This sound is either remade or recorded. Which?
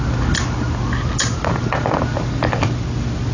recorded